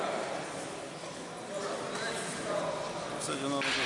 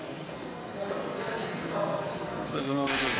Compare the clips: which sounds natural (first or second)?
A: first